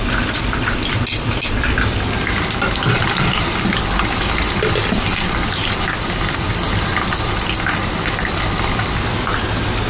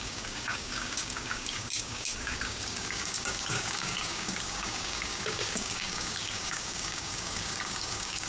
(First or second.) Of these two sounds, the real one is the first